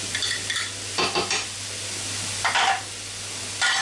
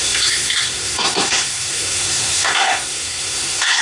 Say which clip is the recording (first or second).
first